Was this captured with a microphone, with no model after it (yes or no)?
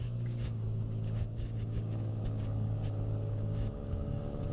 no